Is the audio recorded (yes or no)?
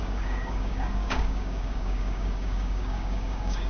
no